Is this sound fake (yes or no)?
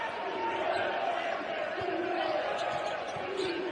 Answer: yes